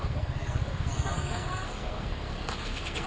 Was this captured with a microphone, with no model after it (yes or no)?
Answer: no